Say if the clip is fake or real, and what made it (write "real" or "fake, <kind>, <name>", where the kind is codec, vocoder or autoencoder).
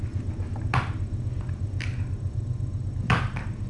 real